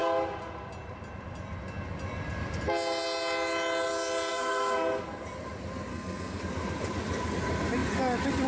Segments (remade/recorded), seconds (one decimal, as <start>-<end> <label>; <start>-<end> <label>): 0.0-4.3 recorded; 4.3-5.0 remade; 5.0-5.9 recorded; 5.9-6.4 remade; 6.4-8.5 recorded